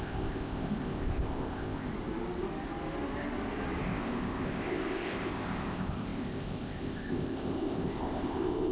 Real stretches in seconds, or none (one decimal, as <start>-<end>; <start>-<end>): 1.9-3.8